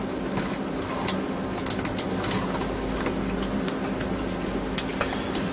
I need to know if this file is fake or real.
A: real